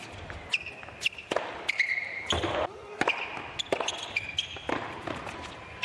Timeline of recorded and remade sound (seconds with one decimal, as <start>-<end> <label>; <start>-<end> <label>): 0.0-5.8 recorded